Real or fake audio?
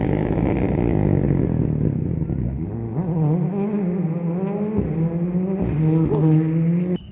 real